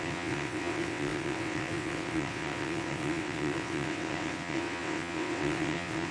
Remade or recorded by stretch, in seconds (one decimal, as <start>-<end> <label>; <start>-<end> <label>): 0.0-6.1 remade